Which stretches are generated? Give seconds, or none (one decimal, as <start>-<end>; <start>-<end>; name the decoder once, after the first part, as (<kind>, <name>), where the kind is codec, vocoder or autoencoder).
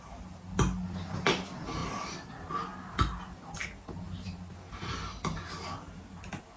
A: 1.8-2.3 (vocoder, BigVGAN v2)